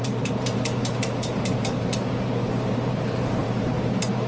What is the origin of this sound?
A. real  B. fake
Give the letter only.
B